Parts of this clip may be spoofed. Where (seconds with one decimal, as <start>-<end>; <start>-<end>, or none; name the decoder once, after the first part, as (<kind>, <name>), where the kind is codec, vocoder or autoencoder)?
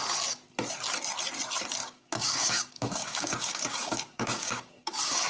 1.8-5.3 (codec, DAC)